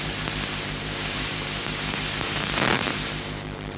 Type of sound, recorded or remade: remade